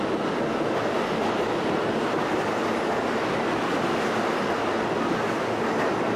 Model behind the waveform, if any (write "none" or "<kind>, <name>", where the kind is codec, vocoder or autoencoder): none